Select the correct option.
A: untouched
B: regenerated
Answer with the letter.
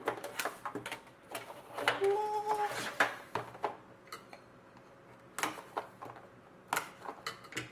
A